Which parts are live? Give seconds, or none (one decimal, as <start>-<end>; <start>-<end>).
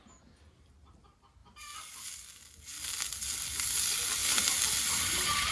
0.0-5.5